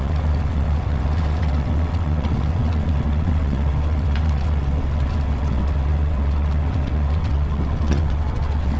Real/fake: fake